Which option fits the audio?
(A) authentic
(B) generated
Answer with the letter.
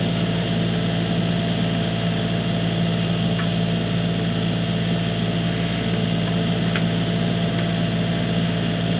A